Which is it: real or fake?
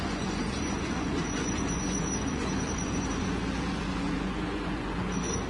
fake